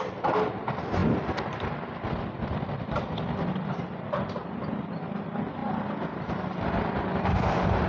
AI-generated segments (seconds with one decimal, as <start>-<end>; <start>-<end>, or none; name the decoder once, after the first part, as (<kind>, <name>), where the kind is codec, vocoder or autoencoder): none

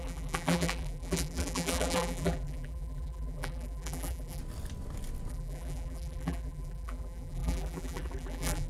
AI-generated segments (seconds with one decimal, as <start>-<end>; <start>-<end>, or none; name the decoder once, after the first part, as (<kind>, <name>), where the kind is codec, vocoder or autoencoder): 0.0-4.4 (vocoder, BigVGAN v2); 5.3-8.7

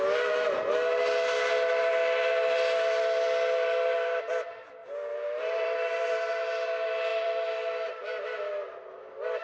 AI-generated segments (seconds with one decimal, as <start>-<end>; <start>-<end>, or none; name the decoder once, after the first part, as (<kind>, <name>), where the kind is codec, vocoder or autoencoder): 4.8-6.3 (vocoder, BigVGAN v2); 7.1-7.9

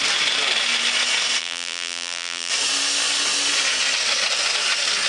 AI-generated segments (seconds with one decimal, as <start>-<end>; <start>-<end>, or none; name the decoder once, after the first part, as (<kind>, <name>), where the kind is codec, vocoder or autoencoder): 1.4-2.5 (vocoder, BigVGAN v2)

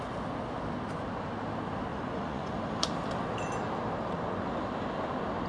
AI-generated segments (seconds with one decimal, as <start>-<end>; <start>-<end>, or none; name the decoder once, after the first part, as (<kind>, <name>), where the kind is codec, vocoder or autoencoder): 1.9-2.5 (vocoder, Vocos)

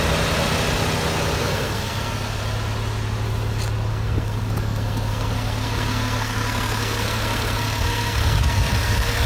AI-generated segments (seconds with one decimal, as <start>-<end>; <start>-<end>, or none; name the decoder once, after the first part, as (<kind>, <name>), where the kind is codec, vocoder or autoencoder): 1.4-2.4 (codec, SNAC); 3.9-9.3

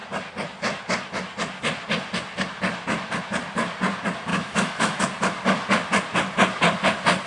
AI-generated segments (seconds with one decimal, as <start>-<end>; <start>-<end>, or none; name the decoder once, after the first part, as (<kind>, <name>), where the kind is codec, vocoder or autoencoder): 4.3-5.0 (autoencoder, DAC-VAE)